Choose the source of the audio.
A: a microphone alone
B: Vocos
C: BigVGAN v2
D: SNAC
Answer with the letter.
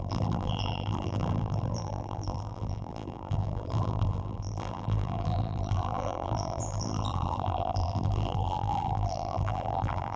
C